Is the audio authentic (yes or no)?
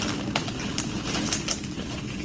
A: yes